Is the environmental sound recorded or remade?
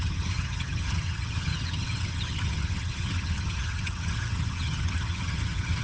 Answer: remade